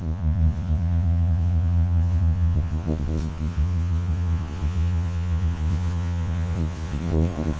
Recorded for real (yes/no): no